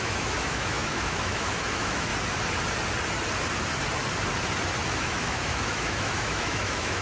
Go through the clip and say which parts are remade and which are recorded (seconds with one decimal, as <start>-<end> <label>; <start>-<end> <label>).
0.0-2.1 remade; 2.1-5.0 recorded; 5.0-7.0 remade